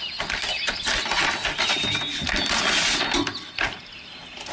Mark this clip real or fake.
real